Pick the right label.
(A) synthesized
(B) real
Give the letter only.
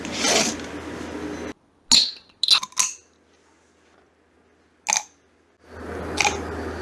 B